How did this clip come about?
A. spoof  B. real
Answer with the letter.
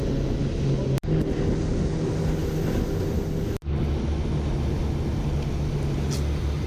B